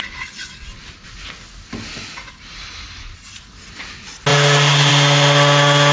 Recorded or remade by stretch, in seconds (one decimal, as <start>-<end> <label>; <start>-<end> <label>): 0.0-5.9 recorded